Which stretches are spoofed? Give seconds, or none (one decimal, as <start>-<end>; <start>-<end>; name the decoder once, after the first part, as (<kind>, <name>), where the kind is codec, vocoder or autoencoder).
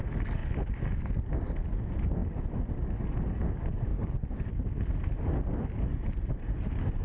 3.9-4.5 (codec, DAC)